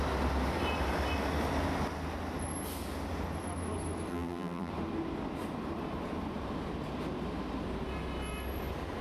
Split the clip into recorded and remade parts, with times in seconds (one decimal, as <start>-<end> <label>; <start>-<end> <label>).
0.0-4.1 recorded; 4.1-4.7 remade; 4.7-9.0 recorded